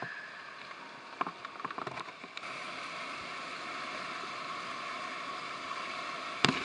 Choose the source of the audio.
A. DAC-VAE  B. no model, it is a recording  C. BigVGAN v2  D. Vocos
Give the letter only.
B